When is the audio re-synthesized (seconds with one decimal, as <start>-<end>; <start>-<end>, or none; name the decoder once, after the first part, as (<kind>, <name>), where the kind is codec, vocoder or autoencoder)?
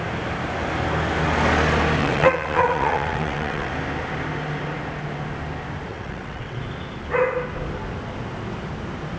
2.0-3.7 (vocoder, WaveNeXt); 5.9-6.6